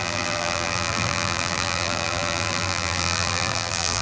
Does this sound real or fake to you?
fake